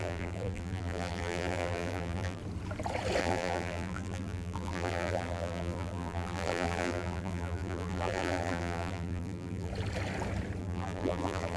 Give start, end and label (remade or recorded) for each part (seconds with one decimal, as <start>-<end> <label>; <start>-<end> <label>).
0.0-2.4 remade; 2.4-3.2 recorded; 3.2-9.7 remade; 9.7-10.6 recorded; 10.6-11.6 remade

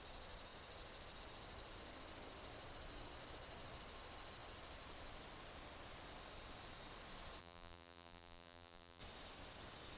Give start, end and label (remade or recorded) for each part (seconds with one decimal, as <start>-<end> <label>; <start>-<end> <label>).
0.0-7.4 recorded; 7.4-9.0 remade; 9.0-10.0 recorded

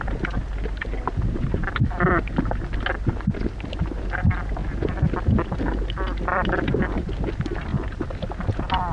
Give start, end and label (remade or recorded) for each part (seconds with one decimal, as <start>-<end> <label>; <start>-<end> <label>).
0.0-6.3 recorded; 6.3-7.1 remade; 7.1-7.7 recorded; 7.7-8.3 remade; 8.3-8.9 recorded

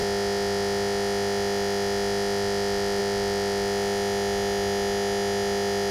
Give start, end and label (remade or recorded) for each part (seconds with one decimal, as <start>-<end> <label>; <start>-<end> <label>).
0.0-5.9 recorded

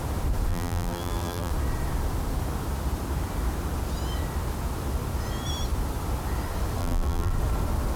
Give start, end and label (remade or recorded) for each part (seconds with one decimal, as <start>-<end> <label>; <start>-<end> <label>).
0.0-0.5 recorded; 0.5-1.5 remade; 1.5-6.8 recorded; 6.8-7.3 remade; 7.3-8.0 recorded

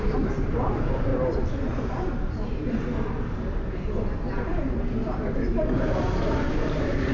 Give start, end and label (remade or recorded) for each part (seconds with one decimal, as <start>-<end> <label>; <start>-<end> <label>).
0.0-7.1 remade

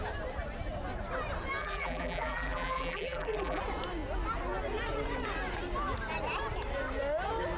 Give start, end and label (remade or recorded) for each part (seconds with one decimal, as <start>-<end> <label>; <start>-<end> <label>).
0.0-1.6 recorded; 1.6-3.6 remade; 3.6-7.6 recorded